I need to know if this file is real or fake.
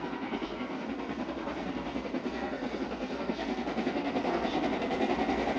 fake